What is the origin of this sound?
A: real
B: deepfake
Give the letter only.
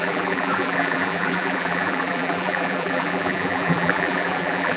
B